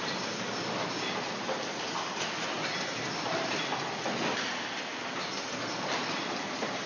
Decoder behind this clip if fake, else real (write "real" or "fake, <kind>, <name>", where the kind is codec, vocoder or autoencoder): real